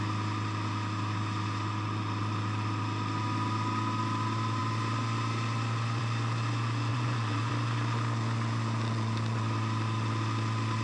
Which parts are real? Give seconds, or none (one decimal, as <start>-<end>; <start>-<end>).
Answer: 0.0-6.9; 7.5-10.8